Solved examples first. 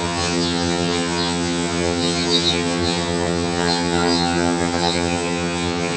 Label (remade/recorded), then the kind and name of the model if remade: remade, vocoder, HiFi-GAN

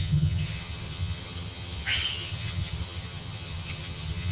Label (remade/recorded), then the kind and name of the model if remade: remade, vocoder, HiFi-GAN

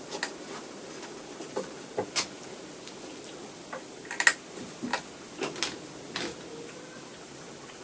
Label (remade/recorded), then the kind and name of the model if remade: recorded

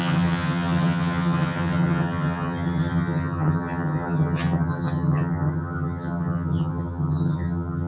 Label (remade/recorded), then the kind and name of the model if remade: remade, vocoder, HiFi-GAN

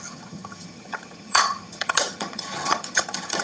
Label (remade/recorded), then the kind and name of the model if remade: remade, vocoder, HiFi-GAN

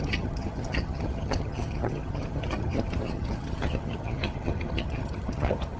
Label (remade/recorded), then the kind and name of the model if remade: remade, vocoder, HiFi-GAN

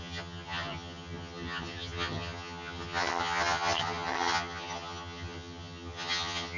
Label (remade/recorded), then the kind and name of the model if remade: remade, vocoder, HiFi-GAN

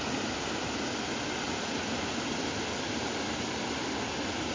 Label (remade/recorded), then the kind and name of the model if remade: recorded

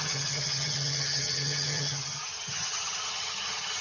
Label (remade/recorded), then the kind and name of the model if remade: remade, vocoder, HiFi-GAN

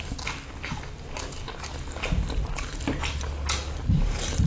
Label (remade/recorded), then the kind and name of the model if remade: recorded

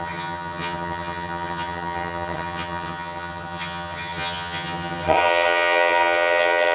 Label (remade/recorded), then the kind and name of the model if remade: remade, vocoder, HiFi-GAN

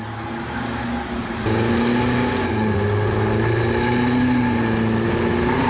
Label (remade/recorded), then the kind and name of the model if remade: recorded